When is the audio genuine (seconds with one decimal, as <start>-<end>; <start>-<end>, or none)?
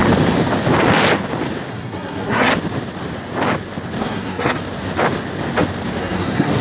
0.0-1.7; 2.5-4.0; 4.6-6.0